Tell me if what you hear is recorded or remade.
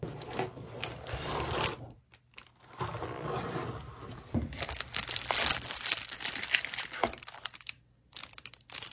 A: recorded